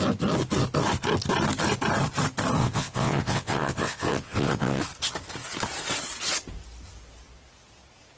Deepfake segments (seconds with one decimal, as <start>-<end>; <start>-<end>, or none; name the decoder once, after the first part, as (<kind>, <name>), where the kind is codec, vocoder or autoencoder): 2.6-4.8 (vocoder, WaveNeXt)